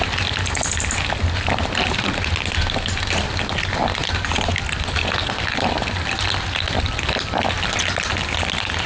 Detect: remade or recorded recorded